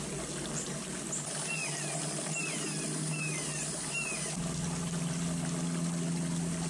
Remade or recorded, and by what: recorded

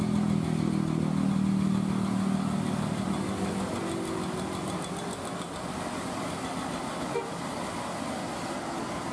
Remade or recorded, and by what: recorded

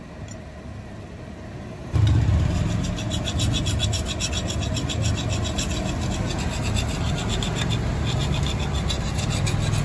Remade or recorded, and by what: recorded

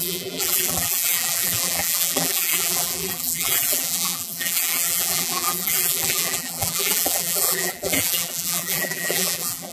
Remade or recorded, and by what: remade, vocoder, BigVGAN v2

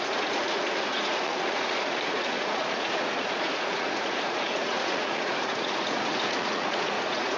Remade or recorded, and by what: remade, vocoder, Vocos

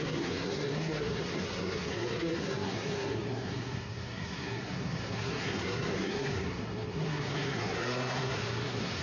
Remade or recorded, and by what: remade, codec, SNAC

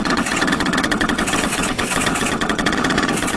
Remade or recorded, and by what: remade, vocoder, WaveNeXt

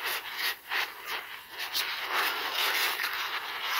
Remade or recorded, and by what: recorded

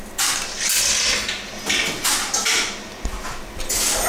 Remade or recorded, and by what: recorded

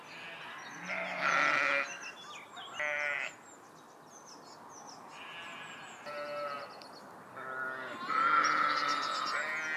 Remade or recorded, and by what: recorded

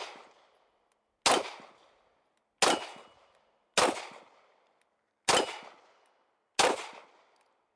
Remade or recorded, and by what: recorded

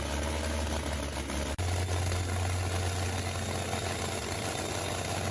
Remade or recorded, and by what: recorded